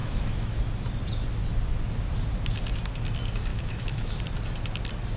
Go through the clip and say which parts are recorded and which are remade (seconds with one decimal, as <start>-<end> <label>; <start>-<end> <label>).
0.0-0.6 remade; 0.6-3.5 recorded; 3.5-4.2 remade; 4.2-5.2 recorded